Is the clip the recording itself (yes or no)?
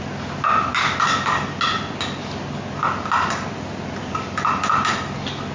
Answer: yes